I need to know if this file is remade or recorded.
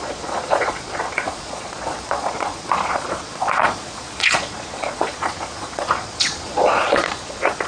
remade